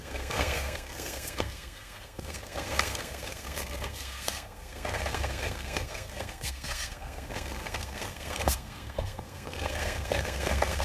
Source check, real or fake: fake